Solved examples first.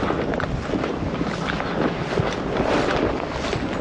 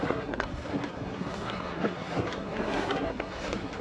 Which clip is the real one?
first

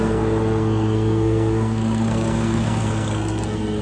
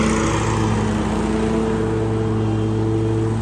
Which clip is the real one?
second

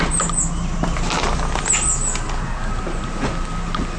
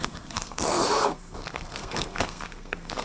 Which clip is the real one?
first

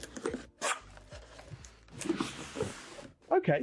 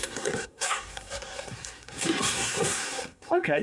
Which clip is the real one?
first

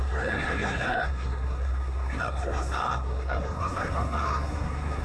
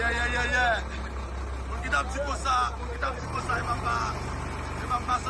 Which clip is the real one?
second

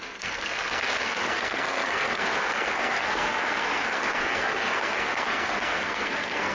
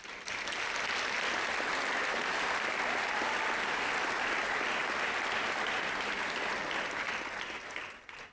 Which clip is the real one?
second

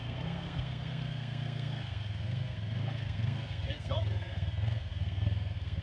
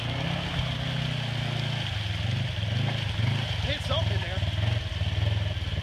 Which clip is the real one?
second